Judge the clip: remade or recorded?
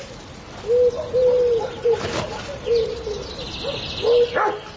recorded